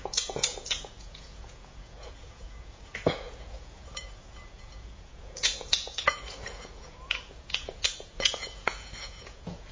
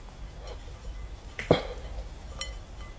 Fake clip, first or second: first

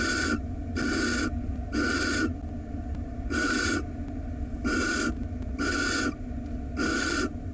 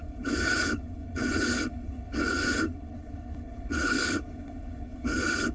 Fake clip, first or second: second